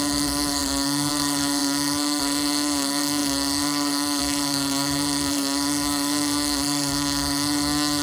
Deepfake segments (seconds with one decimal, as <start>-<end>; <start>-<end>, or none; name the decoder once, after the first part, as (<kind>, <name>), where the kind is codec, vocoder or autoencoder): 0.0-8.0 (codec, SNAC)